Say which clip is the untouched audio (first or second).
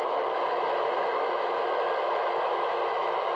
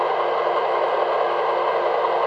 second